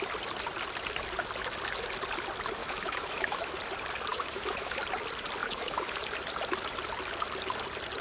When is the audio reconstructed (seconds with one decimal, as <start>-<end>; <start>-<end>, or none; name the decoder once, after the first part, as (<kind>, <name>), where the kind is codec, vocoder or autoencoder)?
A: 2.6-3.6 (autoencoder, DAC-VAE); 4.1-4.8; 5.4-5.9